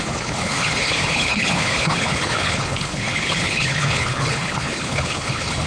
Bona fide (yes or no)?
no